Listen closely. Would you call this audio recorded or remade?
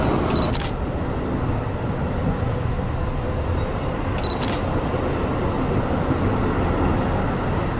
recorded